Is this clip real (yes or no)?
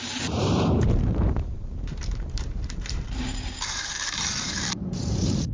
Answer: no